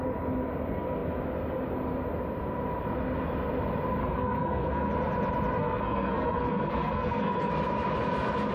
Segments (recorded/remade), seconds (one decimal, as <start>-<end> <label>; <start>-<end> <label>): 0.0-4.0 recorded; 4.0-4.9 remade; 4.9-5.6 recorded; 5.6-7.5 remade; 7.5-8.5 recorded